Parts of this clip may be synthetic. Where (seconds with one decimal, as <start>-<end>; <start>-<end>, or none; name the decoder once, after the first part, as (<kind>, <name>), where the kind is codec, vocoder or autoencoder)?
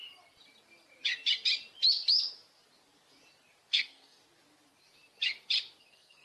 3.7-4.2 (codec, SNAC); 5.8-6.2